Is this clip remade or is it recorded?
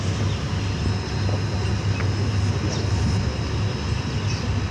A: recorded